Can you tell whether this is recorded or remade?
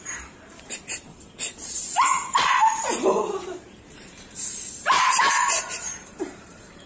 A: remade